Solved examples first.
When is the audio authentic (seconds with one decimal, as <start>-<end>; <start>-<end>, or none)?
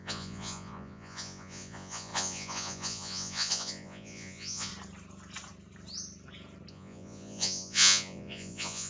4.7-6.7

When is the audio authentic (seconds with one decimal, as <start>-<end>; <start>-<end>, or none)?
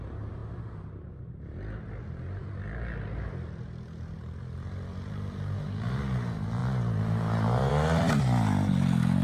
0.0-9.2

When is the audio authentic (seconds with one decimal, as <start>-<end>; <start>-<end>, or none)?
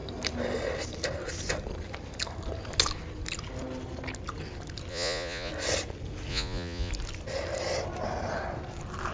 0.0-4.9; 5.5-6.3; 6.9-9.1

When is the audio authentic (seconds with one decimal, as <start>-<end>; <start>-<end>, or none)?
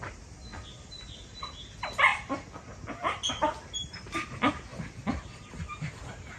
0.0-6.4